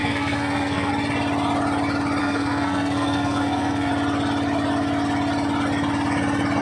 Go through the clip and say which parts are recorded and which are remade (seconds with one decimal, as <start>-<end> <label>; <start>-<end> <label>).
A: 0.0-0.9 remade; 0.9-2.2 recorded; 2.2-3.9 remade; 3.9-6.6 recorded